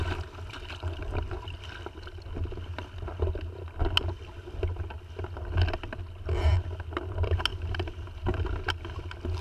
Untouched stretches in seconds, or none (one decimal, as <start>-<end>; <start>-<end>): 0.0-7.5; 8.4-9.4